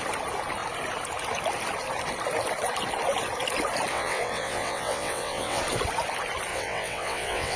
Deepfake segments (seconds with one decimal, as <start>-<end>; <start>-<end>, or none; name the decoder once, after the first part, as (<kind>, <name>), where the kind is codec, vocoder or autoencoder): 3.9-5.6 (vocoder, WaveNeXt); 6.5-7.6